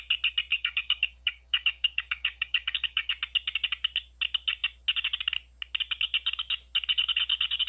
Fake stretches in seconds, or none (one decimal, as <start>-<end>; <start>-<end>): 0.5-3.1